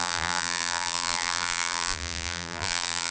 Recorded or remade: remade